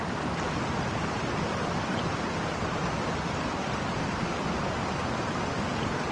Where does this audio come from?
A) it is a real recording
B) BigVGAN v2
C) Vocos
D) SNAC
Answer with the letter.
A